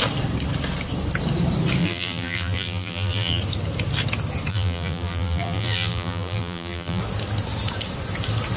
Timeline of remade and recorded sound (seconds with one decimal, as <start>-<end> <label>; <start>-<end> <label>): 0.0-1.8 recorded; 1.8-3.4 remade; 3.4-4.5 recorded; 4.5-7.0 remade; 7.0-8.6 recorded